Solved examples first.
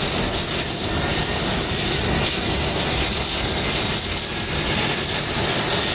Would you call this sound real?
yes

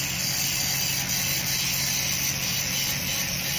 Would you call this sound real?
yes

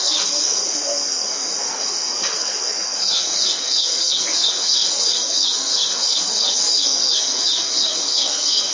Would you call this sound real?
no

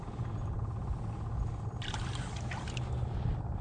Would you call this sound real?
yes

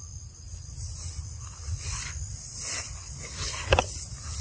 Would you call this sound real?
yes